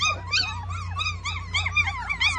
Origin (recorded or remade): recorded